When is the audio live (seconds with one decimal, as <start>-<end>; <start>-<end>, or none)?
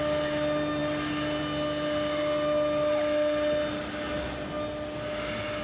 0.0-5.6